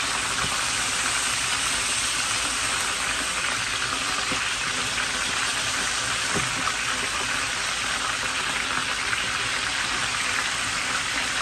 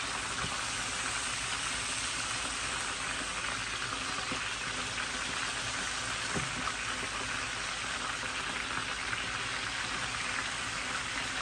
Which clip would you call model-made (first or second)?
first